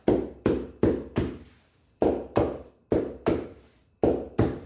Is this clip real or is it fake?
fake